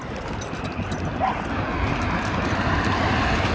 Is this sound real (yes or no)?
yes